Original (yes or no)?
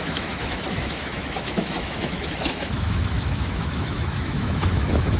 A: no